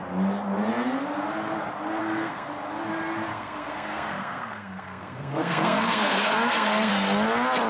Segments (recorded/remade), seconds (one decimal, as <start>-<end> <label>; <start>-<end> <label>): 0.0-2.0 recorded; 2.0-2.5 remade; 2.5-3.3 recorded; 3.3-6.9 remade; 6.9-7.7 recorded